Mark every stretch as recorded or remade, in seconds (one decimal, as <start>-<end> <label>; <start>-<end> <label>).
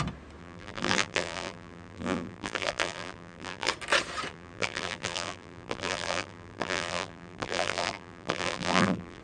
0.0-0.4 recorded; 0.4-3.7 remade; 3.7-4.3 recorded; 4.3-9.2 remade